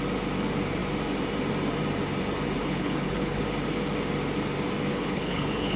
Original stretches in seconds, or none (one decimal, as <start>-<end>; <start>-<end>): 0.0-2.6; 3.4-4.9